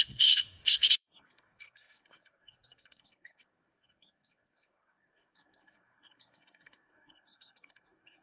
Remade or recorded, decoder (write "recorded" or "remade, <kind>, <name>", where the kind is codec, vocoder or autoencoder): remade, codec, SNAC